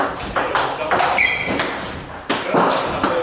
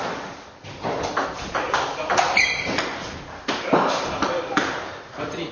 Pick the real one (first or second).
first